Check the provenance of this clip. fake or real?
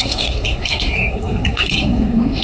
fake